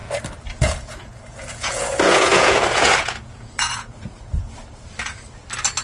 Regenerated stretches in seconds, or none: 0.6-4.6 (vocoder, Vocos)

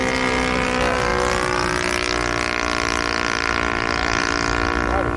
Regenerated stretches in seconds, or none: none

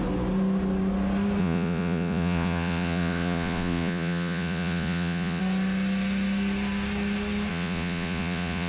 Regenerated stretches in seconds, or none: 1.4-5.4 (vocoder, Vocos); 7.5-8.7

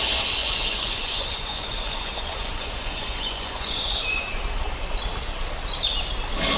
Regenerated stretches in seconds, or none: 0.4-4.4 (vocoder, Vocos)

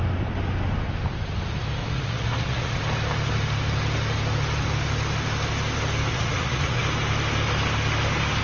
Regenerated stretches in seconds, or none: 1.8-2.8 (vocoder, Vocos); 6.1-6.8

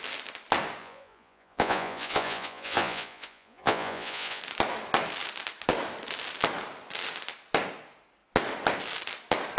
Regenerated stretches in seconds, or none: 0.8-4.4 (vocoder, Vocos)